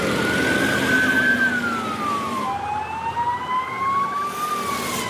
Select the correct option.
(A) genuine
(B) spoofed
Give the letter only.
A